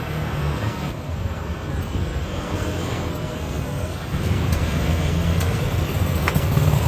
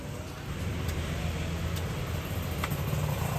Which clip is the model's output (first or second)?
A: first